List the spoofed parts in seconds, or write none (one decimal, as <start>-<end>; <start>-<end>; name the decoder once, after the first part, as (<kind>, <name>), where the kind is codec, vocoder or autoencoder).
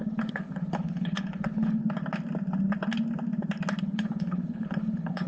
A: 0.0-1.8 (codec, HILCodec); 3.8-5.3